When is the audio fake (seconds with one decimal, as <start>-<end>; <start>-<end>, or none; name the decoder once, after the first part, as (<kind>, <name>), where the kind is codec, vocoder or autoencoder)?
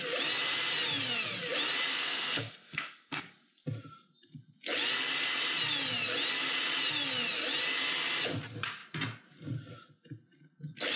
1.9-3.2 (codec, SNAC)